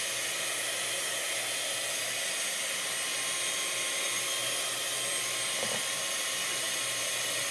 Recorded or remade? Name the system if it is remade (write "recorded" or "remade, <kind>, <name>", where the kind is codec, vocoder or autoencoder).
recorded